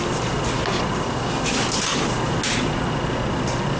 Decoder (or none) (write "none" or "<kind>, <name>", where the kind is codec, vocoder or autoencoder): none